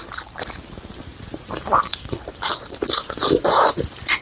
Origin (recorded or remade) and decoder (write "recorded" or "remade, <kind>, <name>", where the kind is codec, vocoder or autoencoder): remade, vocoder, BigVGAN v2